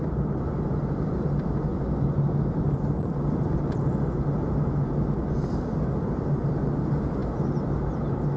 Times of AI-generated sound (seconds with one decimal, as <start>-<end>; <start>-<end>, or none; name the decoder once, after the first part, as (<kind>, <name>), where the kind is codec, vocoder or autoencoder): none